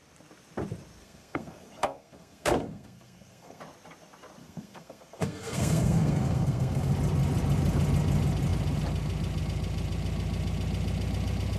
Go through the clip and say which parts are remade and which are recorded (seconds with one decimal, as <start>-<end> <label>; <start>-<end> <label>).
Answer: 0.0-1.0 recorded; 1.0-3.6 remade; 3.6-4.4 recorded; 4.4-6.9 remade; 6.9-11.6 recorded